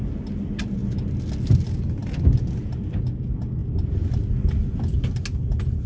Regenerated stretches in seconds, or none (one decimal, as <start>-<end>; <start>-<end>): none